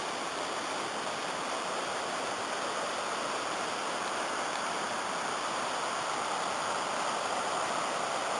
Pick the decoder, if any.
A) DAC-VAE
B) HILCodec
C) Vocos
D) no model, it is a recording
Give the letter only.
D